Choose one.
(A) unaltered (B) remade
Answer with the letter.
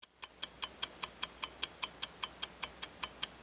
A